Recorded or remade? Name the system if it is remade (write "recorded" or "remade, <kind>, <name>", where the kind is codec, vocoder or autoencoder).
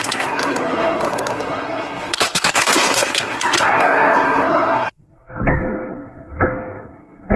remade, codec, SNAC